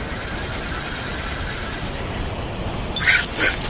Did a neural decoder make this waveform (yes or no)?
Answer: no